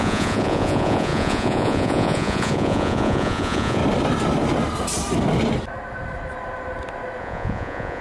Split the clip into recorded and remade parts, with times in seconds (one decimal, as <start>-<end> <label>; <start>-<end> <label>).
0.0-3.8 remade; 3.8-7.2 recorded; 7.2-8.0 remade